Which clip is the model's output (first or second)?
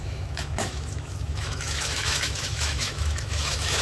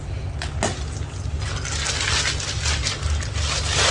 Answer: first